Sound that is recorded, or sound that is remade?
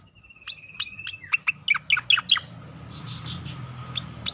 recorded